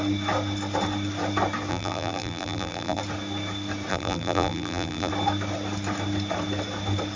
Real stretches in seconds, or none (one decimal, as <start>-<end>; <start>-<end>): 0.0-1.7; 3.0-3.9; 5.1-7.2